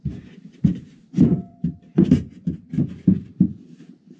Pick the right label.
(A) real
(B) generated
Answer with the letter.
B